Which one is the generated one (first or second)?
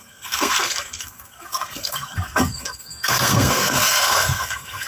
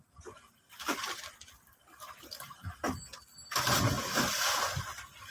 first